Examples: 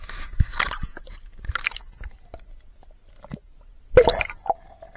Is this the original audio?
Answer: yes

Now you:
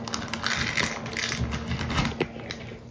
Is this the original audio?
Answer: yes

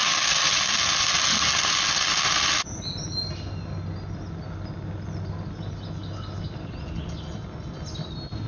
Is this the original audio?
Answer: yes